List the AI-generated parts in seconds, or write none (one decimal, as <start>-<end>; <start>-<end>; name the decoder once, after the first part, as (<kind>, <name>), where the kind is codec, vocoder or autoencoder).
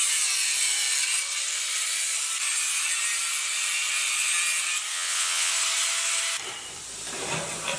4.9-5.5 (vocoder, WaveNeXt)